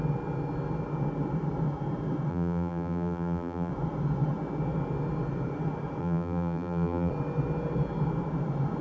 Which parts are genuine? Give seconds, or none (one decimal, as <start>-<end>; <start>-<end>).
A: 0.0-2.3; 3.7-6.0; 7.1-8.8